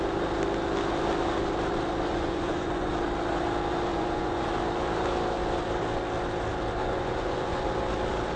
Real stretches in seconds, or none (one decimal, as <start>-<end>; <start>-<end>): 0.0-2.1; 2.9-3.9; 4.5-6.8; 7.7-8.4